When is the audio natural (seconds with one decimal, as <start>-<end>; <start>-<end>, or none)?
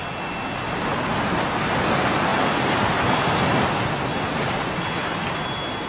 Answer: 0.0-5.9